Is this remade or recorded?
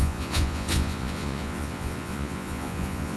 remade